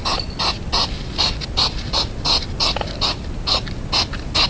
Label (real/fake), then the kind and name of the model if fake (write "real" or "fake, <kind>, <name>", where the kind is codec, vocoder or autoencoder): real